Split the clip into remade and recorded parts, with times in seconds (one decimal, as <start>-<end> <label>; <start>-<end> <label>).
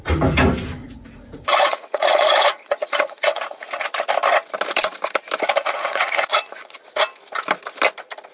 0.0-0.8 recorded; 0.8-3.7 remade; 3.7-5.6 recorded; 5.6-6.9 remade; 6.9-8.3 recorded